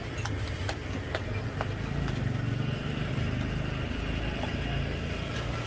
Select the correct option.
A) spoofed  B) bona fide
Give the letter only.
B